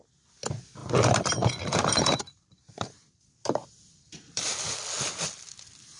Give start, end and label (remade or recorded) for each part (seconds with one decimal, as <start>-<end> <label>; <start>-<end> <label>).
0.0-0.8 recorded; 0.8-4.4 remade; 4.4-6.0 recorded